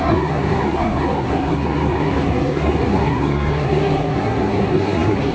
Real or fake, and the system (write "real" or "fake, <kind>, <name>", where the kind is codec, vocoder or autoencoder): fake, codec, SNAC